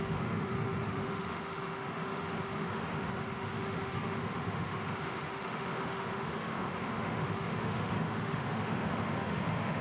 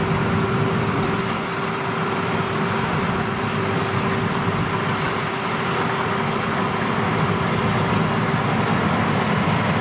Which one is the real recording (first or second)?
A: second